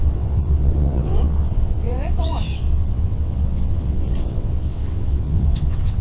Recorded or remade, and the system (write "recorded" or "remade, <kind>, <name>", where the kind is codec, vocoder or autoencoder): remade, vocoder, WaveNeXt